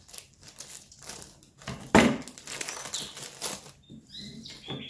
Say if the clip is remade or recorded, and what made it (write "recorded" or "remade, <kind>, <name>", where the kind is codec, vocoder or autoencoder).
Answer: recorded